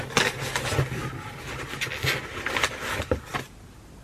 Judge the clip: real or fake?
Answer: real